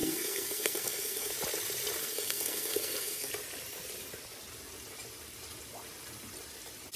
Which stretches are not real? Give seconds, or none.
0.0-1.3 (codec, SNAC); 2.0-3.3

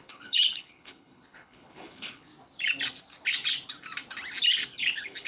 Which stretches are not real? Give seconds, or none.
0.0-2.3 (codec, HILCodec); 4.7-5.3

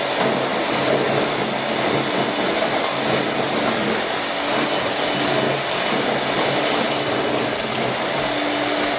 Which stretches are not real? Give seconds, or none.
none